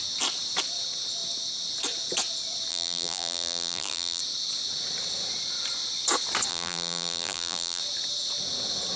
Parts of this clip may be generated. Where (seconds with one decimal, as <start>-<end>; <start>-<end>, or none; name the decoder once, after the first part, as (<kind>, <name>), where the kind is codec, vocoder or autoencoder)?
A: 2.7-4.2 (vocoder, BigVGAN v2); 6.5-7.8